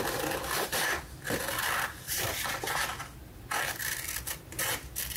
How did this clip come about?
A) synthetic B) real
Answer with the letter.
A